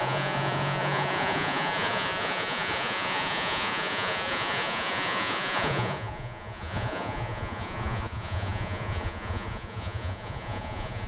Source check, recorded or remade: remade